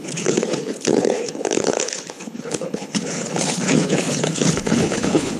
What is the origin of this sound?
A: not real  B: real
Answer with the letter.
A